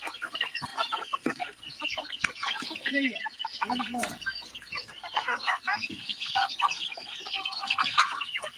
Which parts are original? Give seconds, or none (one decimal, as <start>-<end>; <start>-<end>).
none